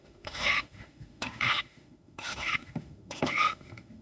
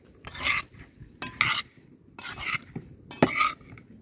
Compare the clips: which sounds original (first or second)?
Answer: second